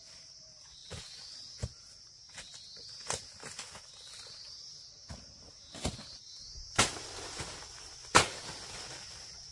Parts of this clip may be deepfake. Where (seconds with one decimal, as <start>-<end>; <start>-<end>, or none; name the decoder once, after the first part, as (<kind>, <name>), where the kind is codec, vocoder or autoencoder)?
0.8-1.5 (vocoder, BigVGAN v2)